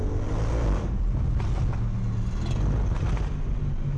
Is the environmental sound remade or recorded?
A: recorded